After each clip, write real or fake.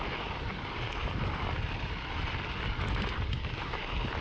real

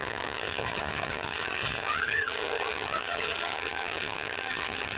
fake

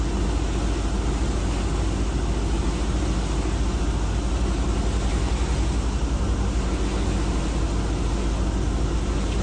real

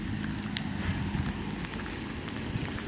real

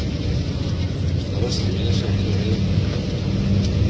real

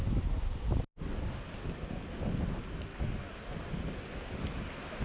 real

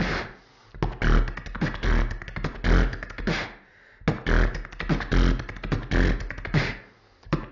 real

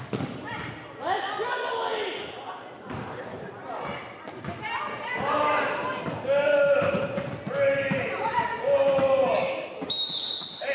real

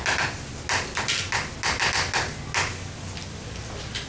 real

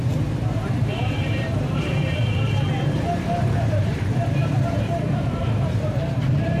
fake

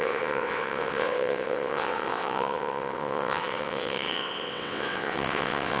fake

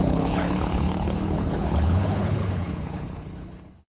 fake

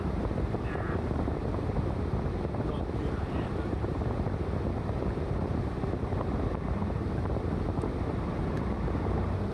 fake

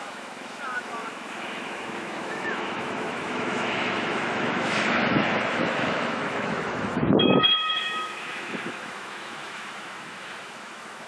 fake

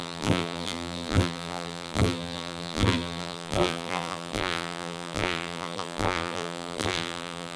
fake